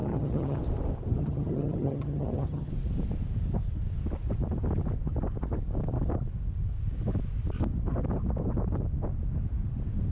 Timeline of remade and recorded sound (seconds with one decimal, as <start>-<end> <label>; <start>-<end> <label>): 0.0-0.6 remade; 0.6-1.1 recorded; 1.1-2.7 remade; 2.7-10.1 recorded

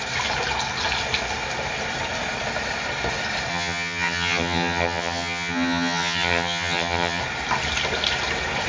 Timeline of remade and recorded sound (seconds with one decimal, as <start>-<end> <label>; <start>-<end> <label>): 0.0-3.5 recorded; 3.5-7.2 remade; 7.2-8.7 recorded

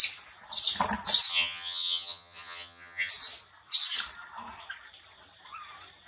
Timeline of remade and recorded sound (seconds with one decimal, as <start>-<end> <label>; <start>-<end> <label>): 0.0-1.3 recorded; 1.3-3.1 remade; 3.1-6.1 recorded

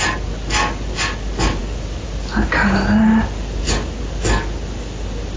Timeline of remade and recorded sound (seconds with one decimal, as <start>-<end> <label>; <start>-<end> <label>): 0.0-5.4 recorded

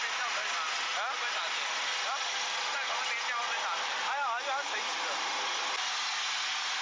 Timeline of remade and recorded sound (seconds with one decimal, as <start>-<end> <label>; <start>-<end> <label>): 0.0-6.8 recorded